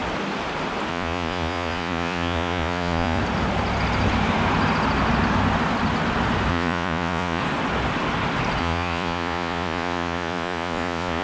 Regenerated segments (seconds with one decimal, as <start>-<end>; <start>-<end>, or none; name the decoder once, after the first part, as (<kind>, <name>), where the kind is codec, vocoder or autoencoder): 0.9-3.2 (vocoder, Vocos); 6.5-7.4; 8.6-11.2